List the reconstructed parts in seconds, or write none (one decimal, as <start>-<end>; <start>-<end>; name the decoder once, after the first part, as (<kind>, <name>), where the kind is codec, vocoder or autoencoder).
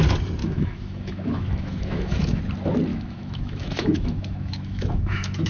0.4-2.4 (autoencoder, DAC-VAE); 2.9-5.5